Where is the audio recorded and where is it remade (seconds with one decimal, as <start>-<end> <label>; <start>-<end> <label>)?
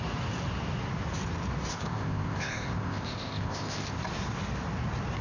0.0-1.7 recorded; 1.7-4.0 remade; 4.0-5.2 recorded